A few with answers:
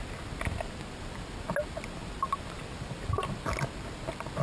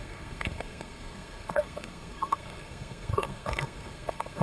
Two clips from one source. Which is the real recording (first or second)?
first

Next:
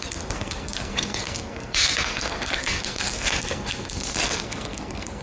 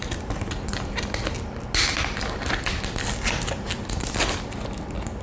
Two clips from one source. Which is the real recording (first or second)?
second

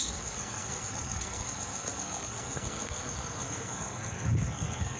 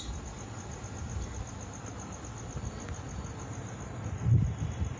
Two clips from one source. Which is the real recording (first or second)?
second